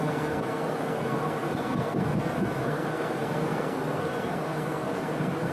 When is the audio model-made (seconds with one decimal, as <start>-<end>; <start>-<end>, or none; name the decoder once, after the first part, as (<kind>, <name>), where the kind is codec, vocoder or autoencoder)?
0.0-5.5 (codec, SNAC)